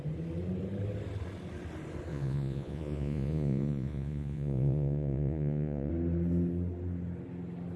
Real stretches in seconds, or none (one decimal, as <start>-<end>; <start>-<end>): 0.0-2.1; 5.9-7.8